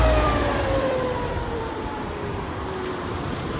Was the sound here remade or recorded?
remade